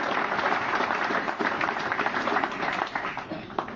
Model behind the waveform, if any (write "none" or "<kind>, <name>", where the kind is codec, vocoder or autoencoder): vocoder, BigVGAN v2